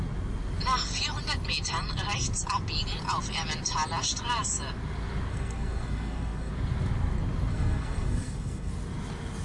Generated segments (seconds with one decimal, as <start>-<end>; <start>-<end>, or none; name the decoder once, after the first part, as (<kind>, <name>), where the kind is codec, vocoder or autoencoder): 5.3-6.5 (codec, SNAC); 7.5-8.7